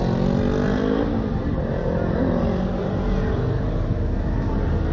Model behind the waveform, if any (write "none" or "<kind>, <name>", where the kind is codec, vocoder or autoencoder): none